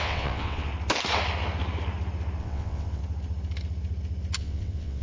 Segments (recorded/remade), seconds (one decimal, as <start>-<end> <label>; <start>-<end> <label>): 0.0-0.7 remade; 0.7-2.4 recorded; 2.4-3.0 remade; 3.0-4.4 recorded; 4.4-5.0 remade